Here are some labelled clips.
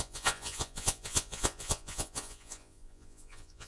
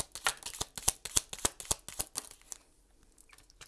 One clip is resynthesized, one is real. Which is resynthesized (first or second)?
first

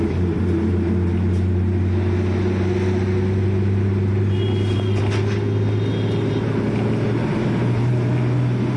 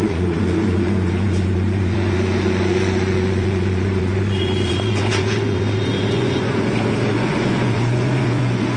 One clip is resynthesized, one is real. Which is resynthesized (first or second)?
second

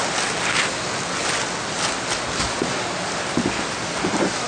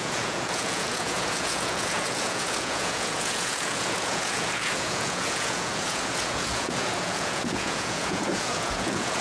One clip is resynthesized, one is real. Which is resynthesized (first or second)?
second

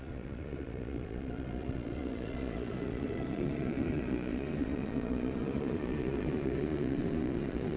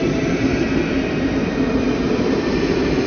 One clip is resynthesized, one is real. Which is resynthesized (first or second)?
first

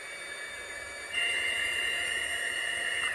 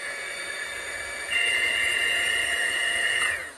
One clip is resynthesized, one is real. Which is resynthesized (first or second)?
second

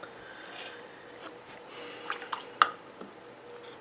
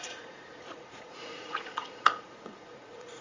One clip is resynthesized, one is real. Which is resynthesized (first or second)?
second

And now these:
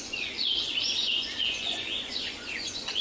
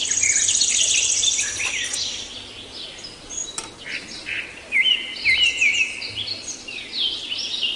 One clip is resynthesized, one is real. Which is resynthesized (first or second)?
first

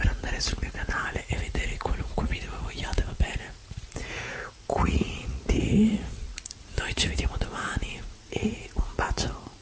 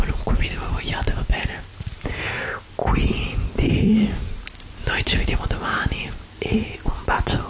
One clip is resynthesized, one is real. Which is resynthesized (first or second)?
first